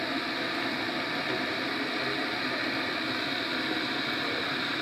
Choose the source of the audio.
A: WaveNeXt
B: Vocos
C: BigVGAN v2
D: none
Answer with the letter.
D